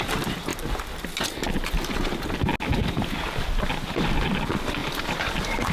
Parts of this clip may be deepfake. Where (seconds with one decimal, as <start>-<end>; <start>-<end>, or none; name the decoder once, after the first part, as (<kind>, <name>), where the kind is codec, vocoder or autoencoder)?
0.0-0.5 (vocoder, BigVGAN v2); 3.9-5.7